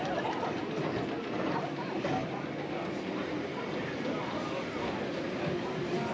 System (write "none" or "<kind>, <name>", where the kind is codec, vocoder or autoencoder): none